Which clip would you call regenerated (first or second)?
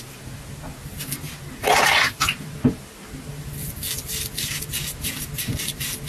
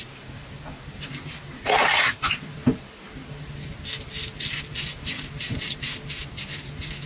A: second